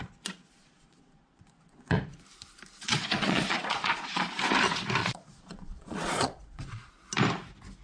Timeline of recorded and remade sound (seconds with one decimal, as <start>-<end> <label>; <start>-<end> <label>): 0.0-0.6 recorded; 0.6-2.0 remade; 2.0-2.8 recorded; 2.8-4.3 remade; 4.3-5.0 recorded; 5.0-6.9 remade; 6.9-7.8 recorded